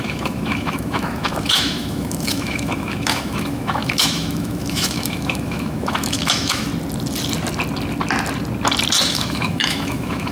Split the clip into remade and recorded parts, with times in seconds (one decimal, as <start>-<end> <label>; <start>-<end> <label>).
0.0-6.7 remade; 6.7-9.0 recorded; 9.0-10.3 remade